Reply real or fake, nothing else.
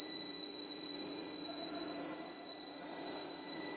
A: fake